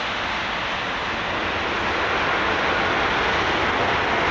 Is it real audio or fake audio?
real